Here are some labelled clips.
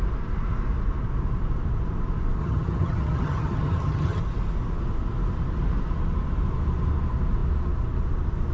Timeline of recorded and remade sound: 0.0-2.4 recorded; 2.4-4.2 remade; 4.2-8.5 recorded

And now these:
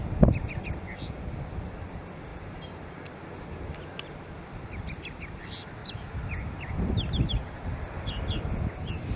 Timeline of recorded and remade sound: 0.0-5.8 recorded; 5.8-6.5 remade; 6.5-9.2 recorded